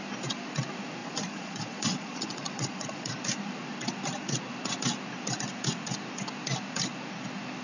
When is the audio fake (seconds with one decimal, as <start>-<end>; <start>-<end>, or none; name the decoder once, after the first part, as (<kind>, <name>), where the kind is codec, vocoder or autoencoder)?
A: 1.0-3.1 (vocoder, Vocos)